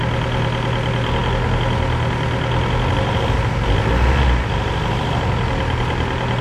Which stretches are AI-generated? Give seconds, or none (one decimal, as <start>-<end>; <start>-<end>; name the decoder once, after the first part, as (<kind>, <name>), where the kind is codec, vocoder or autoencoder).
none